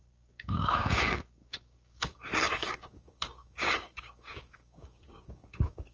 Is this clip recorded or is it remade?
remade